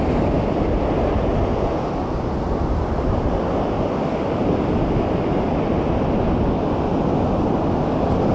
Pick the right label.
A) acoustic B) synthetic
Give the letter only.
A